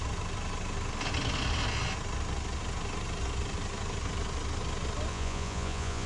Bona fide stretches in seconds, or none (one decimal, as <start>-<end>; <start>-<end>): 0.0-5.1